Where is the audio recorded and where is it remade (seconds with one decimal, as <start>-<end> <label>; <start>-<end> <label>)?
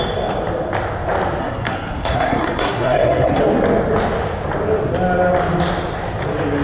0.0-1.4 recorded; 1.4-3.4 remade; 3.4-6.6 recorded